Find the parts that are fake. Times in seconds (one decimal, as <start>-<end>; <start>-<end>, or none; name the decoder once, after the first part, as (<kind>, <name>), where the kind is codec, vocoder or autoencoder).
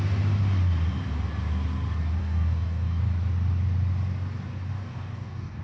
2.2-3.0 (codec, DAC); 4.7-5.6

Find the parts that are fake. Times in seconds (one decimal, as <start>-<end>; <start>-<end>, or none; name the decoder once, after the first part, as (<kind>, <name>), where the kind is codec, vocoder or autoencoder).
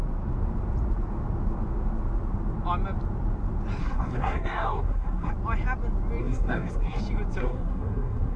3.8-5.3 (codec, SNAC); 6.2-7.0; 7.4-8.4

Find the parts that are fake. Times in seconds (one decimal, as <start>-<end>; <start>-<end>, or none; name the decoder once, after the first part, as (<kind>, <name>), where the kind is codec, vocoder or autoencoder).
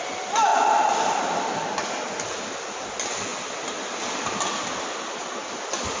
none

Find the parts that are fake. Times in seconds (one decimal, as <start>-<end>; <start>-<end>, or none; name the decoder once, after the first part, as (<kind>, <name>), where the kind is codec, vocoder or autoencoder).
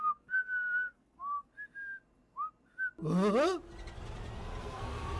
0.0-1.5 (codec, SNAC); 4.6-5.2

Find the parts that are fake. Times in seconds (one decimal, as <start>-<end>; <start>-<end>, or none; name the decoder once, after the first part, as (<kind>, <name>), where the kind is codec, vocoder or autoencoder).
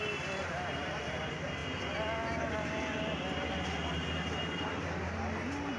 0.4-1.2 (vocoder, BigVGAN v2)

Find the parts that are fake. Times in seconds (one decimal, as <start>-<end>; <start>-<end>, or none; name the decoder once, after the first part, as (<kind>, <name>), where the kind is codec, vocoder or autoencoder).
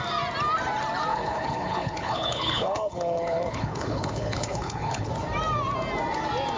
1.1-5.1 (codec, HILCodec)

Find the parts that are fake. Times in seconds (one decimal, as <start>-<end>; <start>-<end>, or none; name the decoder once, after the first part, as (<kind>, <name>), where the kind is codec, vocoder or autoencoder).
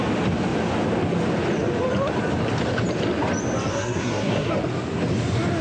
3.7-4.5 (codec, SNAC)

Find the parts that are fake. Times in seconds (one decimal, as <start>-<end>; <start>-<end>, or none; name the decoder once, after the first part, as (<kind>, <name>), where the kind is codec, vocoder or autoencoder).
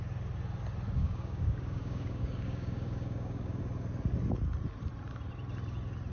1.0-3.6 (codec, DAC)